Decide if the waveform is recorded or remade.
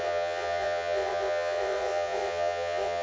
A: remade